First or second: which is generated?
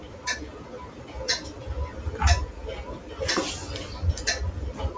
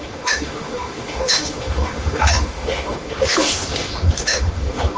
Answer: second